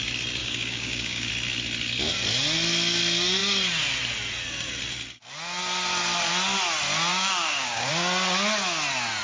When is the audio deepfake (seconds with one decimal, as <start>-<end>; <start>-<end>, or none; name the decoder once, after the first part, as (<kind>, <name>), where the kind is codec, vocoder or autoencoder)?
0.4-1.3 (codec, DAC); 7.1-7.9

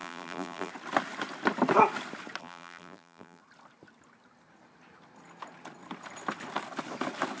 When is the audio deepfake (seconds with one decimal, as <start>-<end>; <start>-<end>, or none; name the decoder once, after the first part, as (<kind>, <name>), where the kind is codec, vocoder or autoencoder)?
0.0-0.7 (vocoder, BigVGAN v2); 2.4-3.4

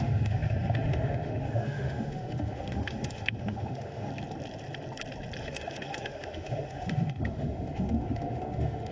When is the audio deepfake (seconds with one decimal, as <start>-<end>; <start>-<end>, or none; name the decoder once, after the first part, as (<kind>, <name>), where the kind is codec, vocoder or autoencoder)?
0.0-4.1 (autoencoder, DAC-VAE); 5.4-8.9

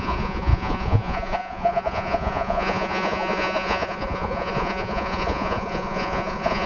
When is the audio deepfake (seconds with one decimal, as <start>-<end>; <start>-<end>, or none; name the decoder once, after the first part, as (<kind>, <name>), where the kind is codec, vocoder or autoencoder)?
0.0-6.7 (vocoder, Vocos)

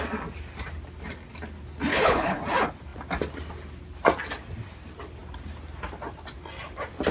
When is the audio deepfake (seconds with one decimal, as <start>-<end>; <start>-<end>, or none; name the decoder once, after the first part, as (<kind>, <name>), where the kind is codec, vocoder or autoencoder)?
1.9-2.4 (codec, HILCodec)

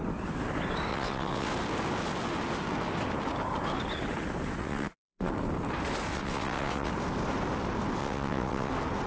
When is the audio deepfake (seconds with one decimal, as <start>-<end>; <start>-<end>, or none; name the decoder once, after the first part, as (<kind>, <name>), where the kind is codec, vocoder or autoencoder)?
0.9-1.5 (vocoder, WaveNeXt); 4.6-5.3; 6.1-6.9; 8.0-8.7

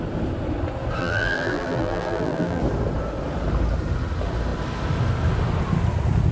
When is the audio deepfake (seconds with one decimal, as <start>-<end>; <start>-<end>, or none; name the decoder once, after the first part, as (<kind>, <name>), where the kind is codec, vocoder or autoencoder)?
1.0-2.6 (vocoder, BigVGAN v2)